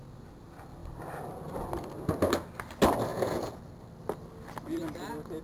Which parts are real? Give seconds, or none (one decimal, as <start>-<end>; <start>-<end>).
0.0-3.1; 3.6-5.4